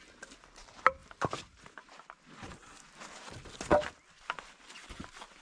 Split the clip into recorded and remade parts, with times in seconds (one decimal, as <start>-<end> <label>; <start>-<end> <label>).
0.0-5.4 recorded